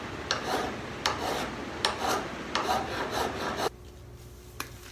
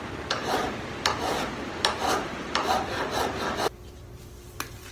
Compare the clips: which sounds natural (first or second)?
first